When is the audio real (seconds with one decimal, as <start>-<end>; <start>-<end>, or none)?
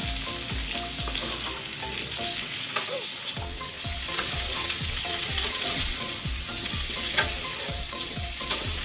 0.0-2.4